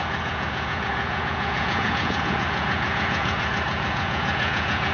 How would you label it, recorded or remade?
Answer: remade